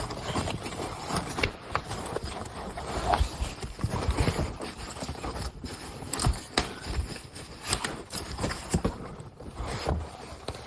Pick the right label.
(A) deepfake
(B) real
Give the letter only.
A